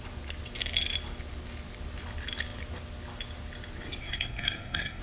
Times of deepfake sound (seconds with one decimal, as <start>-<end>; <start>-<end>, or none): 4.0-5.0

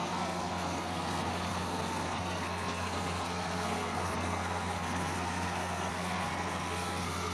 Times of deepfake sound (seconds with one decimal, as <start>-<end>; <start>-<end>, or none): 0.0-7.3

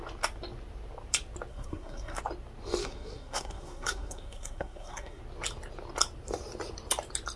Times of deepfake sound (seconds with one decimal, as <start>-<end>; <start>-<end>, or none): 1.5-2.2; 2.8-5.2

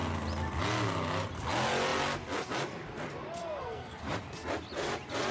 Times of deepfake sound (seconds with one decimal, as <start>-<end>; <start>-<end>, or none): 3.4-4.0

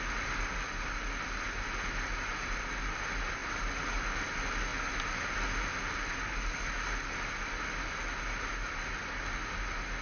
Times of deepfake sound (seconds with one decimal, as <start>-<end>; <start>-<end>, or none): none

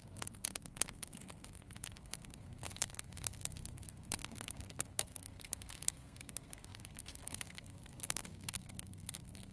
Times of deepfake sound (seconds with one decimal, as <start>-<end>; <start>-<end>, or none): 0.0-9.5

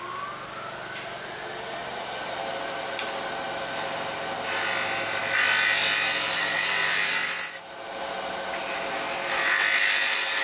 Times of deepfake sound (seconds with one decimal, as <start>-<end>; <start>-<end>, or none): none

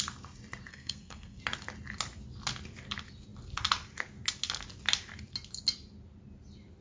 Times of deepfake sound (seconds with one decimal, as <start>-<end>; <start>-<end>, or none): 0.7-1.4